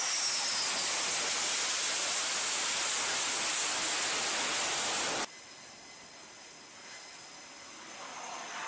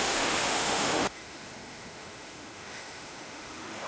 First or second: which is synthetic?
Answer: second